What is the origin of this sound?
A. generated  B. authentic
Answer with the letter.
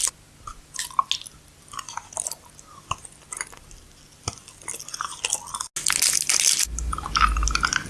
B